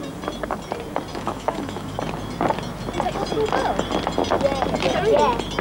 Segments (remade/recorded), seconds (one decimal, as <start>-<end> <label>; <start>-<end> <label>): 0.0-1.1 recorded; 1.1-2.0 remade; 2.0-5.6 recorded